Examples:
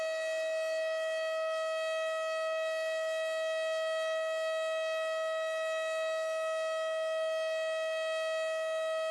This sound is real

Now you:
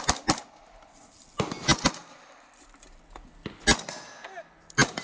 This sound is real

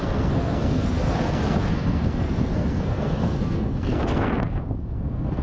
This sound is fake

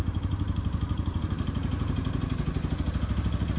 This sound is real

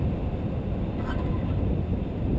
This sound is real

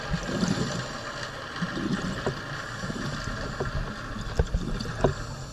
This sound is real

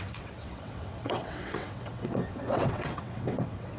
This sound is fake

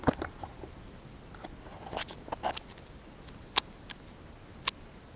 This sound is real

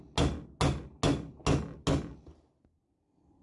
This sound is real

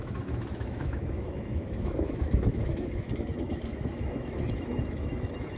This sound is fake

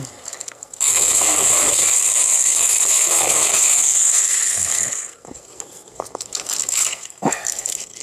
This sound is fake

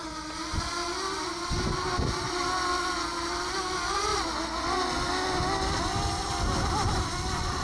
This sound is real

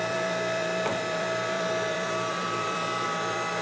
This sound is fake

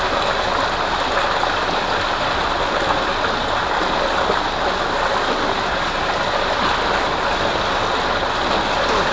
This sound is real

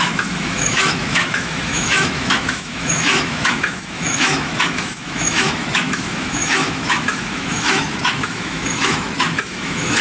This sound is fake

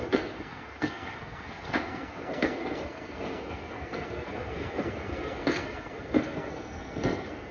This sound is fake